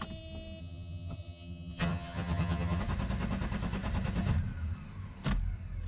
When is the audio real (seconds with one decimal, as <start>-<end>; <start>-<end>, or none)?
0.0-0.6; 2.8-5.9